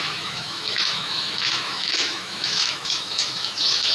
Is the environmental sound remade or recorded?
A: remade